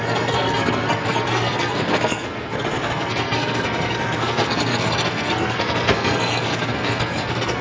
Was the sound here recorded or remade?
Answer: remade